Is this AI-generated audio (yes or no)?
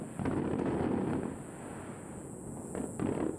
no